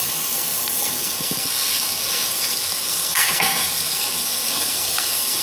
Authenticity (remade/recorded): remade